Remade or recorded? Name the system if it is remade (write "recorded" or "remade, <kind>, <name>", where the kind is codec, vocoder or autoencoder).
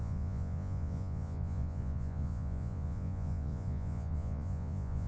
remade, vocoder, Vocos